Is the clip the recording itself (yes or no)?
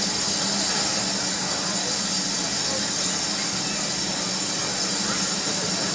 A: yes